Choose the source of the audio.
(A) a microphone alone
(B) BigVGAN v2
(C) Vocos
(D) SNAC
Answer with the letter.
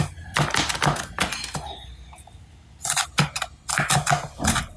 A